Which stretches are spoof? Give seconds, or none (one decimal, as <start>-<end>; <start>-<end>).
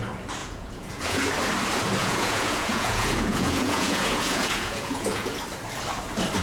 0.4-1.3; 2.0-5.4